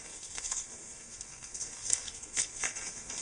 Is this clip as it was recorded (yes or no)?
no